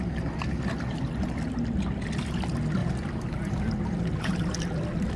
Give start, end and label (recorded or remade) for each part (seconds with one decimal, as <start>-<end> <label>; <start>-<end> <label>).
0.0-2.8 recorded; 2.8-4.4 remade; 4.4-5.2 recorded